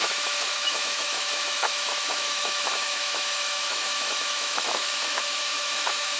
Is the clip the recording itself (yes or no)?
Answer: no